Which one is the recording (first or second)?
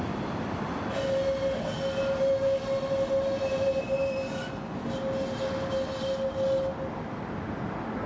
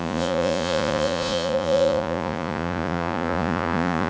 first